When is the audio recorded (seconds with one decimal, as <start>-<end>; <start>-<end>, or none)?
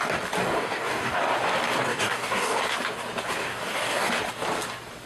0.0-0.5; 1.2-1.7; 2.6-3.4; 4.1-5.1